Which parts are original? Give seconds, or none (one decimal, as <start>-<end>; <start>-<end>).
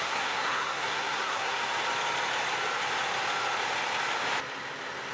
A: 1.6-5.1